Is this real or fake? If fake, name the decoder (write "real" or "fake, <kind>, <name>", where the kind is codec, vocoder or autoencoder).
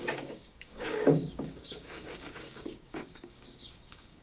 fake, codec, DAC